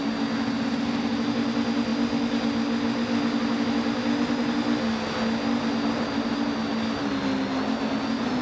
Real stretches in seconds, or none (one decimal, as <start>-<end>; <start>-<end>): 0.0-8.4